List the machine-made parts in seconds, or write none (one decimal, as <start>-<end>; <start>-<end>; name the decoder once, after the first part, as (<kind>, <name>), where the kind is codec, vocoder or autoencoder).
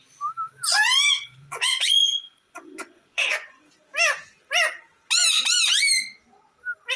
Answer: 0.7-3.7 (vocoder, Vocos)